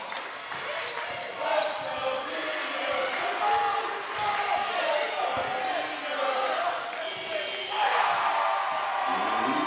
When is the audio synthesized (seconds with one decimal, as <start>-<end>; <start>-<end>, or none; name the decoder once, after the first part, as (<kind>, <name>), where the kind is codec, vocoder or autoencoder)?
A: 7.6-8.2 (codec, SNAC)